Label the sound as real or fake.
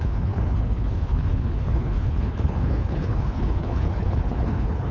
fake